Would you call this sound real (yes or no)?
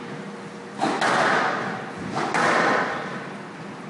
yes